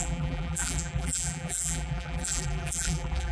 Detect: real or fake fake